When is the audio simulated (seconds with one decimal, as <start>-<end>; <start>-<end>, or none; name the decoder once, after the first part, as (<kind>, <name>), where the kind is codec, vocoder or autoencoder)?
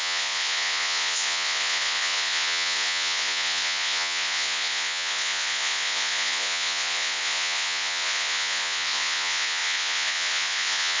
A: 0.0-11.0 (vocoder, Vocos)